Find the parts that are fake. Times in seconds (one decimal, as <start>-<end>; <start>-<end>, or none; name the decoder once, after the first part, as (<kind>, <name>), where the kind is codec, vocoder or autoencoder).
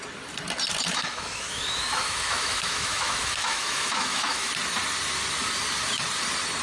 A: 0.9-4.5 (autoencoder, DAC-VAE)